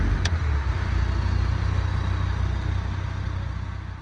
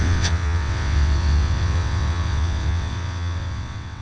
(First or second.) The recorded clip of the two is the first